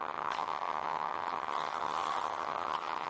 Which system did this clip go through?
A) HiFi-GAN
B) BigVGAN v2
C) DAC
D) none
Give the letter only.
A